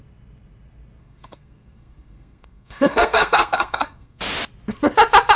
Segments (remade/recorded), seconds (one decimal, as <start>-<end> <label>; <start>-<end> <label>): 0.0-1.0 recorded; 1.0-4.2 remade; 4.2-5.4 recorded